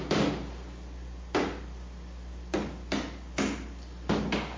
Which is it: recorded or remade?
recorded